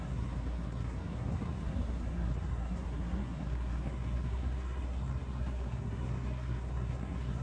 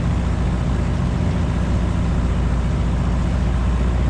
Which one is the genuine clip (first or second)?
second